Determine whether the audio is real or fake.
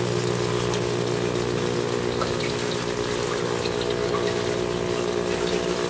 real